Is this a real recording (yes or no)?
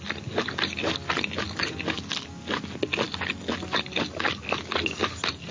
yes